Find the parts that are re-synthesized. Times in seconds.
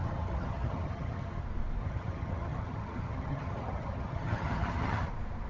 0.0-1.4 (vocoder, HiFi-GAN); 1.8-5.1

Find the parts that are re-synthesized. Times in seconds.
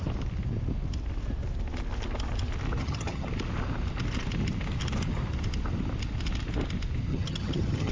2.8-3.3 (vocoder, HiFi-GAN); 7.1-7.9